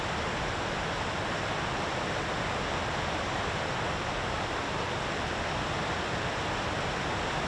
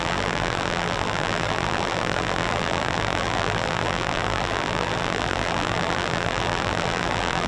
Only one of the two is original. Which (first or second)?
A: first